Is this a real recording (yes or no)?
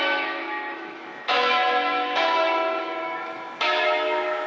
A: no